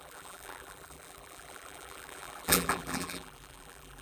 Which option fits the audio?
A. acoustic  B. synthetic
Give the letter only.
B